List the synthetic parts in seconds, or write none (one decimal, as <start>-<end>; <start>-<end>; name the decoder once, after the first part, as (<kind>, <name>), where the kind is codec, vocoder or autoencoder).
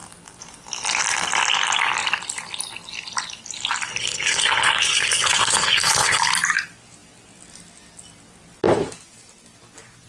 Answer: 3.9-6.2 (codec, HILCodec)